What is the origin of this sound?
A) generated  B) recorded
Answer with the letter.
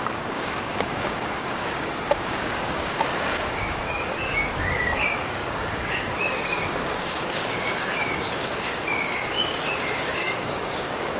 A